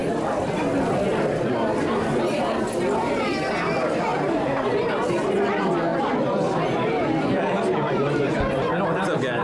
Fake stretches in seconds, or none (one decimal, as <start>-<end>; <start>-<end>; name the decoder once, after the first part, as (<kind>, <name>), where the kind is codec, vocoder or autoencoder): 1.1-3.5 (vocoder, BigVGAN v2); 4.1-5.5; 5.9-8.0

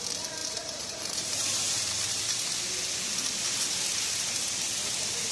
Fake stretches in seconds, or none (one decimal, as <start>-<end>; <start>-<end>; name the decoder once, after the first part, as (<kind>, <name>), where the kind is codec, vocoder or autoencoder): 0.4-2.2 (vocoder, BigVGAN v2)

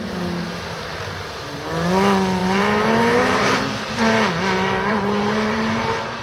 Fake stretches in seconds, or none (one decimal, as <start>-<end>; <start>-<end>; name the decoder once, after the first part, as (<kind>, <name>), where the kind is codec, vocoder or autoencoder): 0.9-1.7 (vocoder, BigVGAN v2); 2.4-3.6; 4.9-6.2